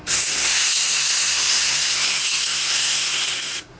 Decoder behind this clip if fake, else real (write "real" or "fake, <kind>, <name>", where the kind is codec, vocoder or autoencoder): fake, codec, SNAC